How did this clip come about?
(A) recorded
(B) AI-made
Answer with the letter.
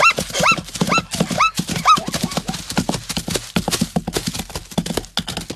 A